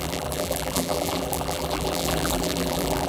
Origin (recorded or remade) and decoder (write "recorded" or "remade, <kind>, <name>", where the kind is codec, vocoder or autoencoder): remade, vocoder, BigVGAN v2